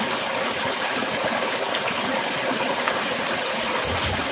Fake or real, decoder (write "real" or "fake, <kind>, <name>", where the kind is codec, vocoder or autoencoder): real